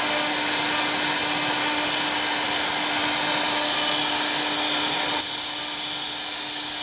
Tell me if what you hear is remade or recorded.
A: recorded